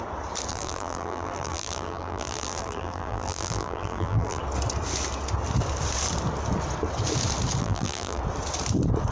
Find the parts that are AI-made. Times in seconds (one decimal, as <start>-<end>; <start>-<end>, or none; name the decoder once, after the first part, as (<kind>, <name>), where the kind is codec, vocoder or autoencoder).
0.5-4.4 (vocoder, BigVGAN v2); 7.6-8.2